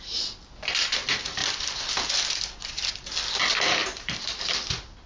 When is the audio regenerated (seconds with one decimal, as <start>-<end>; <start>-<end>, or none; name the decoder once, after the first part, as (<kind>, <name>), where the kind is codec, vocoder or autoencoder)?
3.8-4.5 (vocoder, BigVGAN v2)